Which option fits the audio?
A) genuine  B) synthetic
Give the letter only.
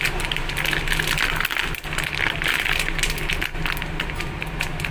A